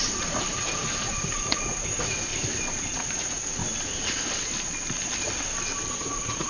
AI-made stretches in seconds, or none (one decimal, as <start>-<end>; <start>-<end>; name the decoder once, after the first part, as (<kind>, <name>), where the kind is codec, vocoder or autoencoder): 0.0-2.3 (vocoder, Vocos); 2.9-3.6; 5.9-6.5